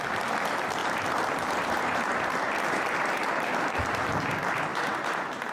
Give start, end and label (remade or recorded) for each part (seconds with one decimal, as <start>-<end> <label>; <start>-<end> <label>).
0.0-0.8 recorded; 0.8-4.1 remade; 4.1-4.7 recorded; 4.7-5.5 remade